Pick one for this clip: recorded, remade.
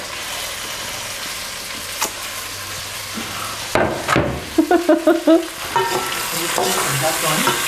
recorded